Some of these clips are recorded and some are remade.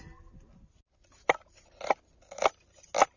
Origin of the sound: recorded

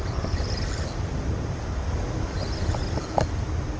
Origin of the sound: recorded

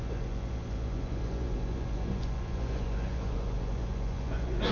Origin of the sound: remade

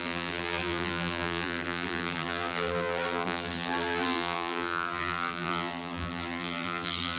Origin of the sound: remade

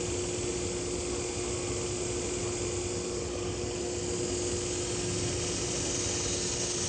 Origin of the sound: recorded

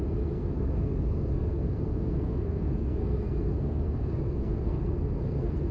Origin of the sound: remade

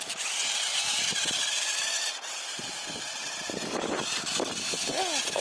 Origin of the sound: recorded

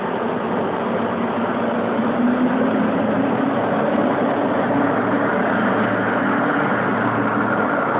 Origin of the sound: recorded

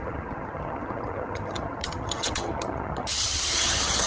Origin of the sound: remade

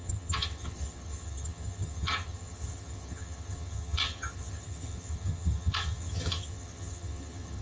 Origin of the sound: remade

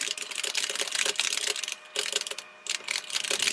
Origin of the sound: recorded